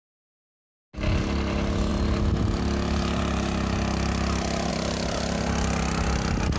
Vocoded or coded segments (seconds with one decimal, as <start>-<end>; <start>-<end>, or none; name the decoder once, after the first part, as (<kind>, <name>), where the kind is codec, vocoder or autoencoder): none